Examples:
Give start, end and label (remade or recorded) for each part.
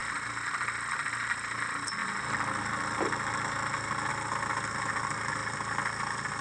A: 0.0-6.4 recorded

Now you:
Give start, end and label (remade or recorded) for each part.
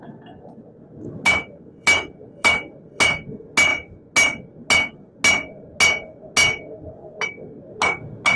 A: 0.0-1.3 recorded; 1.3-3.0 remade; 3.0-8.4 recorded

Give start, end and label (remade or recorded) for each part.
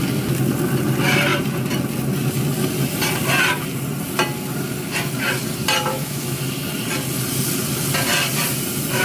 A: 0.0-5.9 recorded; 5.9-6.4 remade; 6.4-9.0 recorded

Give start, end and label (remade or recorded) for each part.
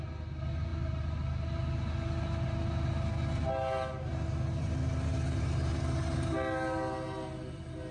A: 0.0-7.9 recorded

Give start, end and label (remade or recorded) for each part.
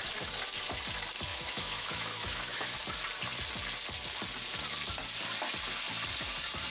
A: 0.0-1.3 recorded; 1.3-2.8 remade; 2.8-6.7 recorded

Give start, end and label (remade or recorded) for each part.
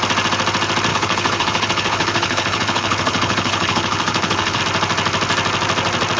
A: 0.0-0.9 recorded; 0.9-4.6 remade; 4.6-6.2 recorded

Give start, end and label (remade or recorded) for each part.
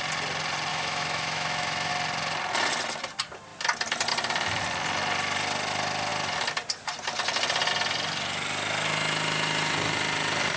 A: 0.0-0.7 recorded; 0.7-1.9 remade; 1.9-10.6 recorded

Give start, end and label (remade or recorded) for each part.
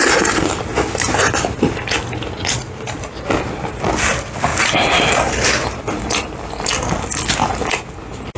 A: 0.0-8.4 recorded